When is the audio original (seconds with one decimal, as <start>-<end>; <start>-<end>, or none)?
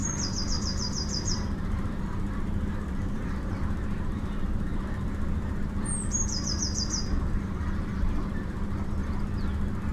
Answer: 0.0-0.5; 9.0-9.9